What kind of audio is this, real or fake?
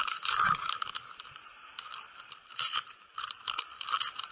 real